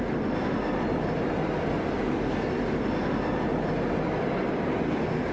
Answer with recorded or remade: recorded